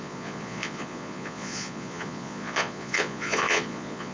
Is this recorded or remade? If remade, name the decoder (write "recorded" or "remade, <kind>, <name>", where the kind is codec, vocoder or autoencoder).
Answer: remade, vocoder, Vocos